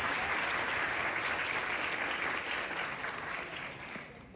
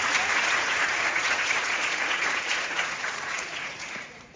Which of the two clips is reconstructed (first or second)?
second